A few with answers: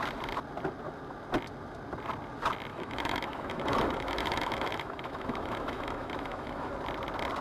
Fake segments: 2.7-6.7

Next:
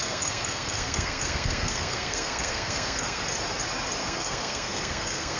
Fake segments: 0.0-3.2; 4.0-5.4

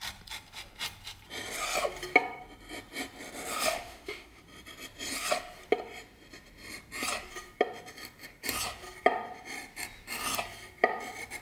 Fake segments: 3.5-4.4